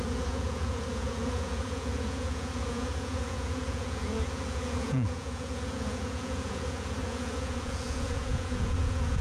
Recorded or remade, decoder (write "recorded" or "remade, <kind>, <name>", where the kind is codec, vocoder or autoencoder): remade, vocoder, Vocos